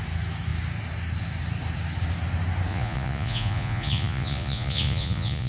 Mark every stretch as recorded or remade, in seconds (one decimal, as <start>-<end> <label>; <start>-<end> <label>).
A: 0.0-2.7 recorded; 2.7-5.5 remade